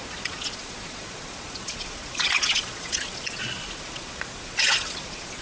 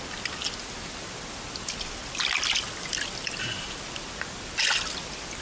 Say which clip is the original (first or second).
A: second